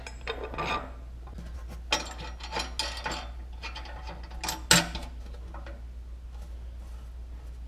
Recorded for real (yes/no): yes